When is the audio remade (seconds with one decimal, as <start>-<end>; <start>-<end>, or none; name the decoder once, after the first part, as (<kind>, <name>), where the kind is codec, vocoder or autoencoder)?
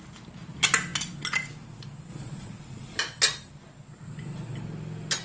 2.1-3.0 (vocoder, Vocos)